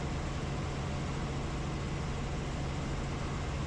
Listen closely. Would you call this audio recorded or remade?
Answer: recorded